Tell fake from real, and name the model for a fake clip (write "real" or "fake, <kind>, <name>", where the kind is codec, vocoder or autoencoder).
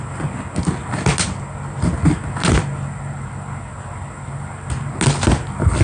real